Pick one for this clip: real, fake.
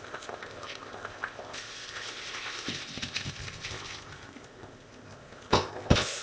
fake